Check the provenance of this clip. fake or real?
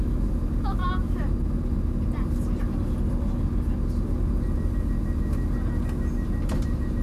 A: real